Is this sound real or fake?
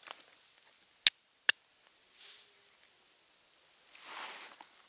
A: real